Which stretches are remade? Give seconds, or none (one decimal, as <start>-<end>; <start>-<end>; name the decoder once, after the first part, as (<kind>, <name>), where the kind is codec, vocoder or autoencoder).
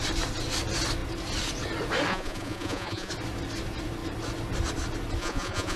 2.1-3.1 (vocoder, Vocos); 5.2-5.8